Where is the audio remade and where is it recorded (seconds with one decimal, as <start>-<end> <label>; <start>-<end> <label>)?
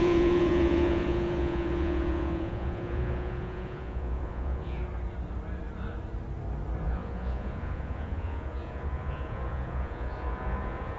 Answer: 0.0-4.8 remade; 4.8-6.8 recorded; 6.8-11.0 remade